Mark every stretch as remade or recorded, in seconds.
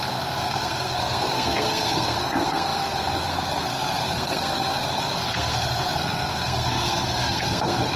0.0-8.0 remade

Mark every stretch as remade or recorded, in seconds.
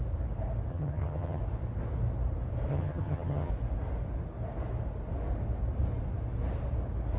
0.0-0.7 recorded; 0.7-1.4 remade; 1.4-2.7 recorded; 2.7-3.5 remade; 3.5-7.2 recorded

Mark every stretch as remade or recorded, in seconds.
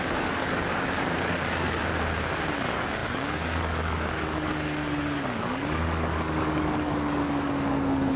0.0-1.8 remade; 1.8-2.6 recorded; 2.6-8.2 remade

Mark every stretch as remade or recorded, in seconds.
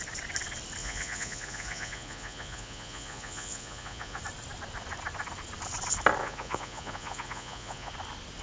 0.0-0.8 recorded; 0.8-4.2 remade; 4.2-6.2 recorded; 6.2-7.9 remade; 7.9-8.4 recorded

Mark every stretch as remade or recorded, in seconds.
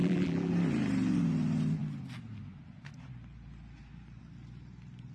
0.0-0.5 remade; 0.5-5.1 recorded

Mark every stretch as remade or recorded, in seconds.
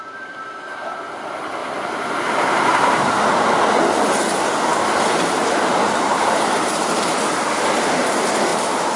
0.0-1.6 recorded; 1.6-3.0 remade; 3.0-4.7 recorded; 4.7-7.2 remade; 7.2-8.5 recorded; 8.5-9.0 remade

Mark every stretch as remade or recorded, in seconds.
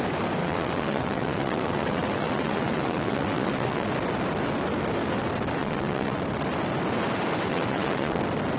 0.0-0.4 recorded; 0.4-3.9 remade; 3.9-5.6 recorded; 5.6-6.2 remade; 6.2-7.5 recorded; 7.5-8.2 remade; 8.2-8.6 recorded